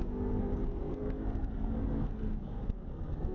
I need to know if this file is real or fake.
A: fake